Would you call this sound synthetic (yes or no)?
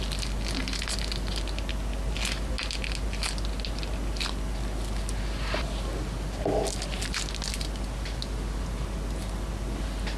no